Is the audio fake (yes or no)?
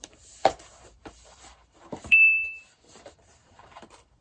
yes